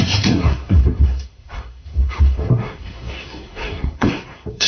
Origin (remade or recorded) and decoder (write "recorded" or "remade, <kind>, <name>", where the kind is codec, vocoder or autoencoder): remade, codec, SNAC